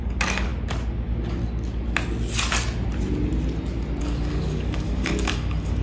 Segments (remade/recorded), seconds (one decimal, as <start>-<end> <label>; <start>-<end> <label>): 0.0-0.5 remade; 0.5-4.0 recorded; 4.0-5.8 remade